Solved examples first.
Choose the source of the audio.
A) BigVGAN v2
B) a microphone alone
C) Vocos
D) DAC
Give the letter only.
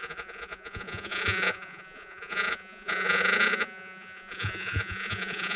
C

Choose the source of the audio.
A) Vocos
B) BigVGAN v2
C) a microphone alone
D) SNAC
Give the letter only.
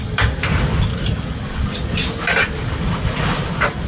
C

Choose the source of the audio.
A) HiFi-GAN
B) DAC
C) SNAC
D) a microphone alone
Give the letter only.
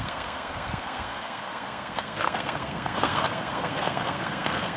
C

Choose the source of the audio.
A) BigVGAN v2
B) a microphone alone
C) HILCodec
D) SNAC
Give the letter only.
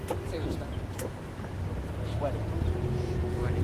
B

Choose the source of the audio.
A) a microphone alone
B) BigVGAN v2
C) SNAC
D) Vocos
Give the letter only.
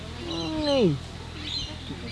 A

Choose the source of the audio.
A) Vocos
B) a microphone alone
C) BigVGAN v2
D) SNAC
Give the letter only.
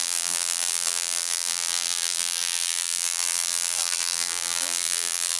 C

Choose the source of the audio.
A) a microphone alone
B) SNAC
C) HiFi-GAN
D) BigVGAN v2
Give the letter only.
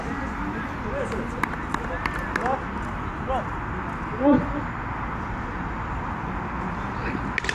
A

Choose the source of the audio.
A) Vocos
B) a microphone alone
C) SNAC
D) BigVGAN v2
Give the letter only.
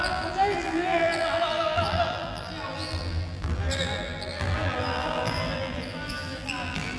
D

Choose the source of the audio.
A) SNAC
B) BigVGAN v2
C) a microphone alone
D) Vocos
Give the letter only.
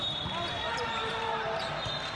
C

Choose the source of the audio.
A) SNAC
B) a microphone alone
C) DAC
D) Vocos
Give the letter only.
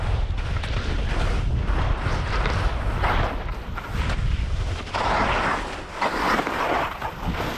B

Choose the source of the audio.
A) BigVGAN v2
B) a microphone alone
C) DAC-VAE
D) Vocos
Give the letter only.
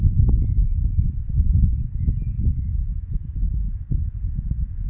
B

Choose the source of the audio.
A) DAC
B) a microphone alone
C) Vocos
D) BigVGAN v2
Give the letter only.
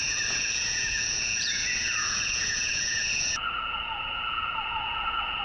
C